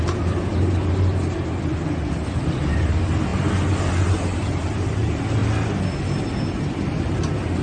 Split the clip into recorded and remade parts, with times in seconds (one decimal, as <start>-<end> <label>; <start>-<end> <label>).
0.0-7.6 recorded